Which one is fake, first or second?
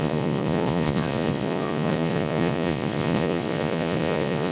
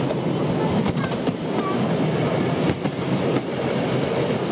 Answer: first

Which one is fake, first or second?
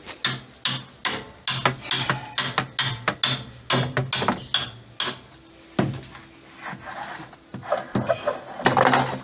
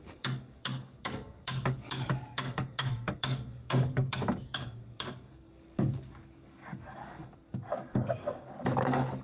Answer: second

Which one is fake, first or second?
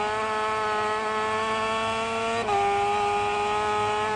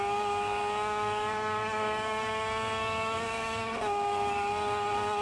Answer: second